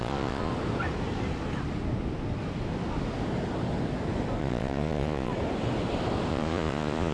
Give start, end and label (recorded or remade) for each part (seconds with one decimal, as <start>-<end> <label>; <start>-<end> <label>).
0.0-0.5 remade; 0.5-4.4 recorded; 4.4-5.3 remade; 5.3-6.3 recorded; 6.3-7.1 remade